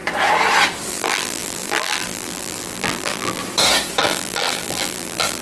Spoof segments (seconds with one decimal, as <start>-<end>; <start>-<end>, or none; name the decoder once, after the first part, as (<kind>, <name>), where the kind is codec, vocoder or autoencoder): 0.9-3.4 (vocoder, BigVGAN v2); 4.0-5.4